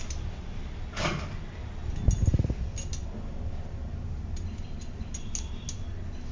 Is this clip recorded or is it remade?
recorded